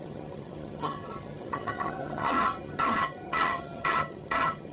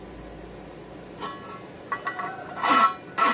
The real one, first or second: second